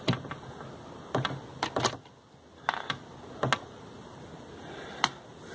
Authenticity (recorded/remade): recorded